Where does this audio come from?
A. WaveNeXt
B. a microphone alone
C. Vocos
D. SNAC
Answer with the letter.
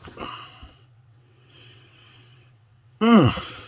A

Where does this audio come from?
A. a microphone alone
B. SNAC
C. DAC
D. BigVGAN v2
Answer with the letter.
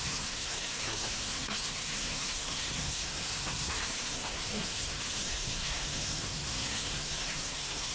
B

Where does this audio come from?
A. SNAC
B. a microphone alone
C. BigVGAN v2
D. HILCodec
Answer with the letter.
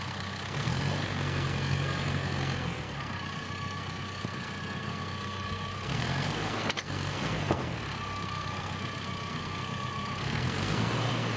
A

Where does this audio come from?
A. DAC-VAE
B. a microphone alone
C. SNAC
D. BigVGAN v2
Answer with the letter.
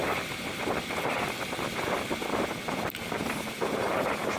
B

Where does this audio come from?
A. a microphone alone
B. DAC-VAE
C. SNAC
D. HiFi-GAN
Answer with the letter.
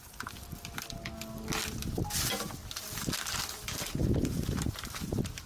A